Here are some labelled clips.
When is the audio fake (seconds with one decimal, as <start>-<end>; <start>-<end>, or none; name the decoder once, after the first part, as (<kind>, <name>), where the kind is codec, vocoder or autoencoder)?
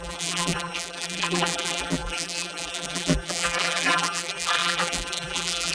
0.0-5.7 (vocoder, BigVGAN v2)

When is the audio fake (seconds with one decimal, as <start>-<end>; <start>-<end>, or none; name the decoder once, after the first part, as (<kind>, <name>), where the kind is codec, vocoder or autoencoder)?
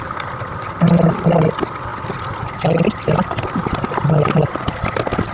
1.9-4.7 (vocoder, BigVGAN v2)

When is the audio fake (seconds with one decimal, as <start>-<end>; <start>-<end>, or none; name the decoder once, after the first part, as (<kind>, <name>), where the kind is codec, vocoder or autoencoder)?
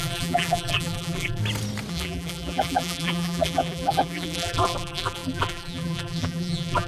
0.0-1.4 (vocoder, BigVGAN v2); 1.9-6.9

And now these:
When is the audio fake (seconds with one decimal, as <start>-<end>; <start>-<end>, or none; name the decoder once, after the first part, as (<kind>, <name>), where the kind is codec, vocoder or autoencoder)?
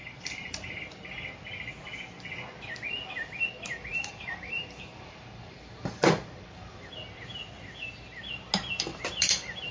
0.0-0.8 (vocoder, BigVGAN v2); 3.9-7.0; 8.9-9.7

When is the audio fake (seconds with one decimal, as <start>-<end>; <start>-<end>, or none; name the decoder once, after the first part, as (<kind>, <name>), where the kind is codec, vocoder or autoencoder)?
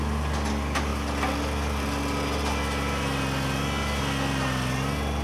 none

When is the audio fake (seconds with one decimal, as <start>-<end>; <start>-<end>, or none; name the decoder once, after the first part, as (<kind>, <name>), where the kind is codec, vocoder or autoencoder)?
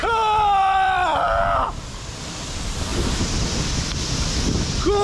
0.6-1.4 (vocoder, BigVGAN v2); 2.9-3.7